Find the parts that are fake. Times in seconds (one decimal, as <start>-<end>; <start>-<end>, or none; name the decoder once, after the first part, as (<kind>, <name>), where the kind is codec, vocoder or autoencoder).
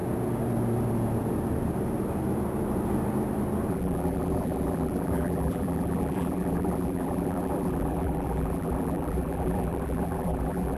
3.7-10.8 (vocoder, BigVGAN v2)